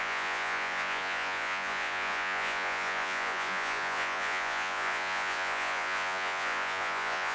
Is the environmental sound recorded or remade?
remade